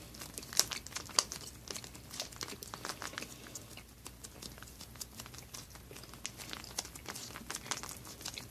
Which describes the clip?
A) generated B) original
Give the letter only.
B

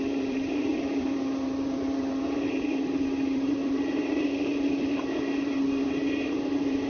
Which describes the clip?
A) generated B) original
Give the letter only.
A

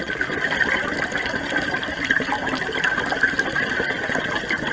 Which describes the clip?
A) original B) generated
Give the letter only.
A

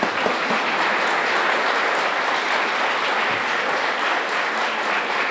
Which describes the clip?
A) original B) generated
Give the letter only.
A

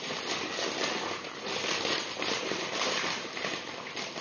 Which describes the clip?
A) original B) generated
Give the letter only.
B